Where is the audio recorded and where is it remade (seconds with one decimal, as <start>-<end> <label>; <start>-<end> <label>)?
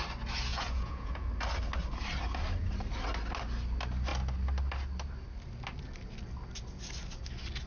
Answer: 0.0-0.5 recorded; 0.5-1.3 remade; 1.3-7.7 recorded